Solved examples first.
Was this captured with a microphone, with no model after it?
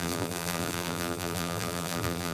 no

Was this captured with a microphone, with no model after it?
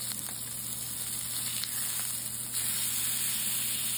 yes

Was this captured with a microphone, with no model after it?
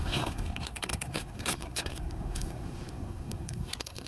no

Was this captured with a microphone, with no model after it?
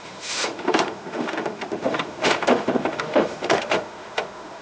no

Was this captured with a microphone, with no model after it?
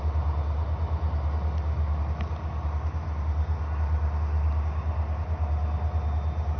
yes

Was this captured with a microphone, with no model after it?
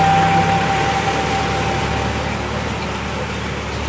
yes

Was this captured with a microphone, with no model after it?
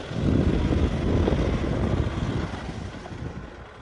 yes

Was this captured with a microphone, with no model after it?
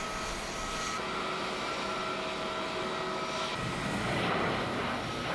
yes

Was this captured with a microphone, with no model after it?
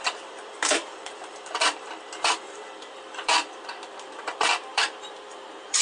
no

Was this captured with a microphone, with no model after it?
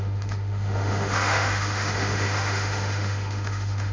no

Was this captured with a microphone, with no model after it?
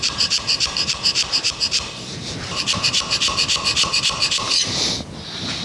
yes